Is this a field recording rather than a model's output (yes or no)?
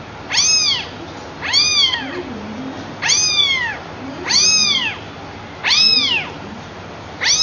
yes